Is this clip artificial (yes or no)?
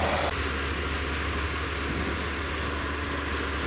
no